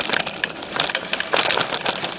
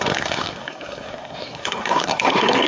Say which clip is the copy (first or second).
second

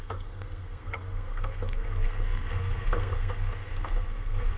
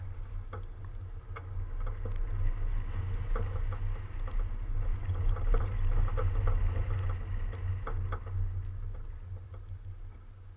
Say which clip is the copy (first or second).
first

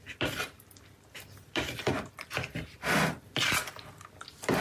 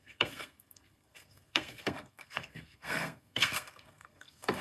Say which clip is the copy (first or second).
second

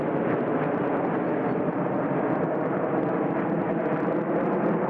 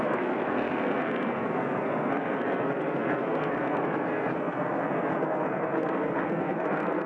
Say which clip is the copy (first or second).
second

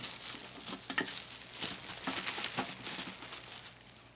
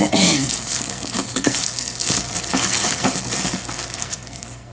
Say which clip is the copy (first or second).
second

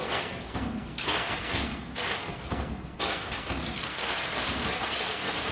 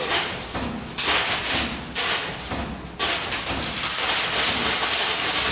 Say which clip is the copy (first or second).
first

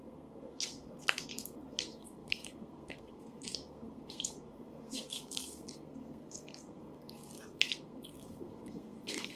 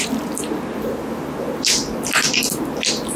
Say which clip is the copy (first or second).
first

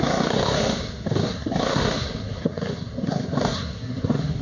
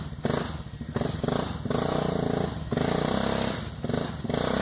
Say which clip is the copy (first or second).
first